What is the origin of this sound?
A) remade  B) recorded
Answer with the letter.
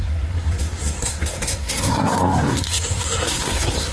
A